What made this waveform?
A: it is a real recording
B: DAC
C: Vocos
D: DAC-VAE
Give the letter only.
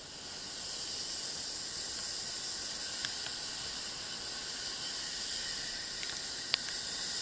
A